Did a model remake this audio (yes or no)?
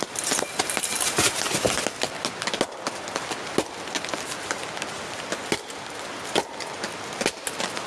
no